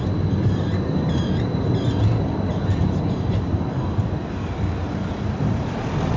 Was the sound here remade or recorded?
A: recorded